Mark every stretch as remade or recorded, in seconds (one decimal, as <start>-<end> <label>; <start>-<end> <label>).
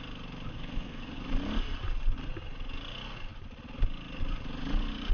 0.0-0.5 recorded; 0.5-1.2 remade; 1.2-5.1 recorded